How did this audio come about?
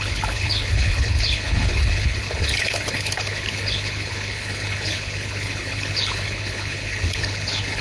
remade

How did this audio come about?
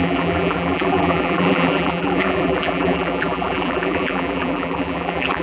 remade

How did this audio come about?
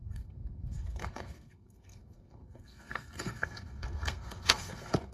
remade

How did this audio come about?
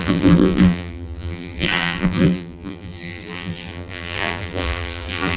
remade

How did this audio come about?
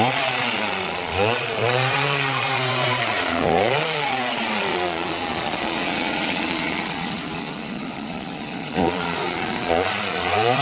remade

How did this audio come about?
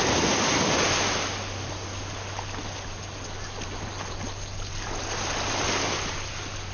recorded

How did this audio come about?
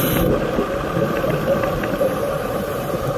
remade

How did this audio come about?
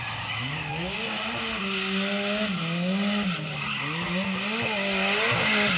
recorded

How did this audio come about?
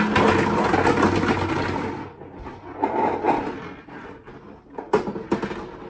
recorded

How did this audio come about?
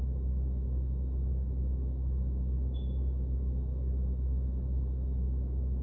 remade